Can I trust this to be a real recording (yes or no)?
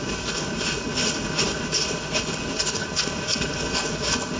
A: no